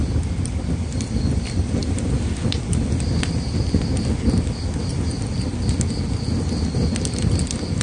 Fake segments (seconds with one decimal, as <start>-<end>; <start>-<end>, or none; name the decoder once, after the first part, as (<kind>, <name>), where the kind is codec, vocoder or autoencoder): none